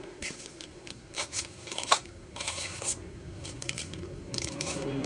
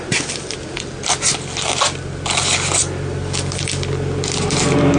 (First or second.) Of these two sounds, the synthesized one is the first